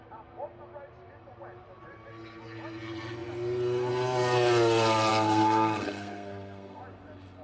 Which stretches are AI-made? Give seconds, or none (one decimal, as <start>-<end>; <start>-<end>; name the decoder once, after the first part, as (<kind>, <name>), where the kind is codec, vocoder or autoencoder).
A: 5.1-6.8 (codec, SNAC)

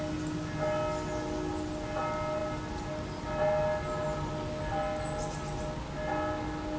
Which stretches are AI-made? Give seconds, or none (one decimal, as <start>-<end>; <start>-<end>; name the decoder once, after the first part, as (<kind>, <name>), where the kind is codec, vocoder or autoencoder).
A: none

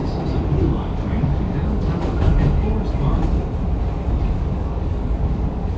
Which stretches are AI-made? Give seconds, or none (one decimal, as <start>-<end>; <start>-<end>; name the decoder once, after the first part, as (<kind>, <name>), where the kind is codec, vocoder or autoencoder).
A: 0.6-2.3 (codec, DAC); 4.2-5.8

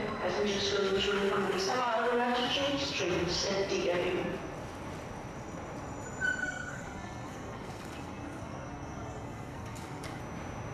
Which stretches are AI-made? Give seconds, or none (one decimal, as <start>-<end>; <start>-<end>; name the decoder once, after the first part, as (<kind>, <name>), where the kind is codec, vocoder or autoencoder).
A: 0.8-3.5 (codec, SNAC); 6.4-10.2

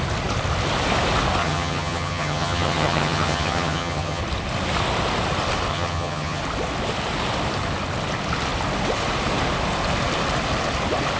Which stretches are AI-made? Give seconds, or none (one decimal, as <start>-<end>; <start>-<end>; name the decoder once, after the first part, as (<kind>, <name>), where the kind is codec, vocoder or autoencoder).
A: 1.4-4.2 (vocoder, HiFi-GAN); 5.7-6.4

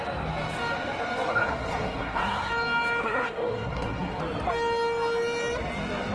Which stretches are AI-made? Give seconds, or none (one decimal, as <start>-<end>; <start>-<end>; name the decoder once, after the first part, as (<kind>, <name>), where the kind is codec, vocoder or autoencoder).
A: 1.3-2.5 (codec, SNAC); 3.0-4.2